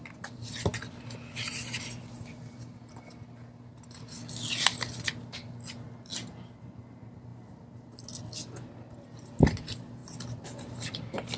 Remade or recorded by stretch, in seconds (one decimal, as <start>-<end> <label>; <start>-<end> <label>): 0.0-11.4 recorded